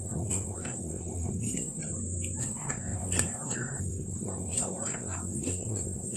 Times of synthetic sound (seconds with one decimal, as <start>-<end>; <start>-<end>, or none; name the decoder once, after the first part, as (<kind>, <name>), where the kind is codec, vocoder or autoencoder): 0.0-1.8 (codec, SNAC); 2.4-6.2

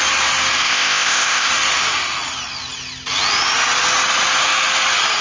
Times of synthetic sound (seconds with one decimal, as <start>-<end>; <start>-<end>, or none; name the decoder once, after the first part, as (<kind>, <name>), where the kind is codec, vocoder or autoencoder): 0.6-1.5 (codec, ZipCodec)